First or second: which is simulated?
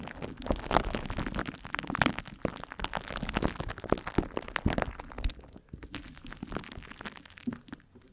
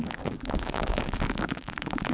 second